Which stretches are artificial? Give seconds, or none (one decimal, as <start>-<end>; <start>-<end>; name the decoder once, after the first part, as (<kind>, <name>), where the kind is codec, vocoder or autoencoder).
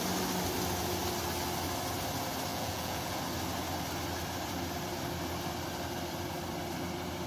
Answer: 2.5-3.2 (vocoder, Vocos)